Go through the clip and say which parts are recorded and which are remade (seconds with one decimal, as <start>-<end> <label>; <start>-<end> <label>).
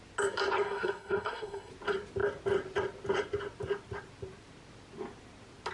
0.0-0.6 recorded; 0.6-1.7 remade; 1.7-5.7 recorded